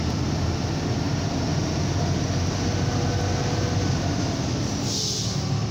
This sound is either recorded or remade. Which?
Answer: recorded